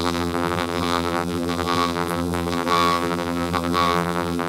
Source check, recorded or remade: remade